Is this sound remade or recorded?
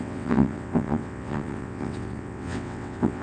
remade